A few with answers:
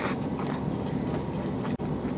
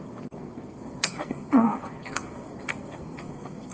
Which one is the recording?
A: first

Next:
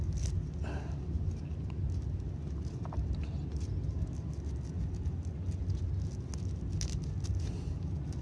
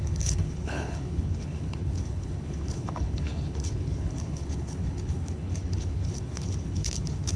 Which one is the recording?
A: first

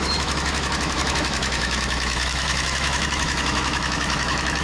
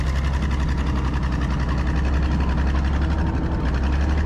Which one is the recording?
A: second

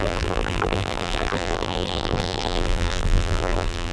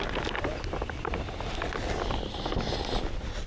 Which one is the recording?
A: second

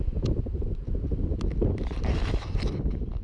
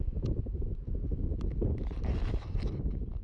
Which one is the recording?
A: second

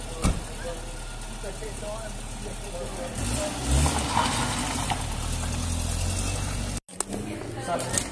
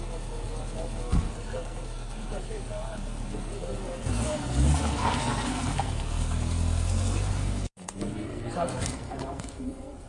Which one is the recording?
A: first